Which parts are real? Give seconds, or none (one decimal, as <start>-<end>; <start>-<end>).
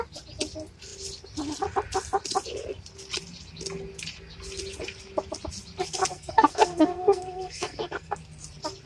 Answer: 0.0-6.1; 8.2-8.9